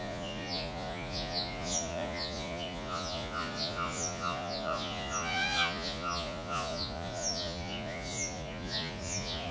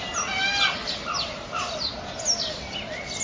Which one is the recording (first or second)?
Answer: second